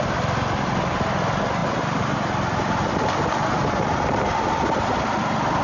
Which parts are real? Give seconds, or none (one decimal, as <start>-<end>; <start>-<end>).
0.0-5.6